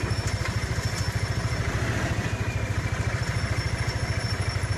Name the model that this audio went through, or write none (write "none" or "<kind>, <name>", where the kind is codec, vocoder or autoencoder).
none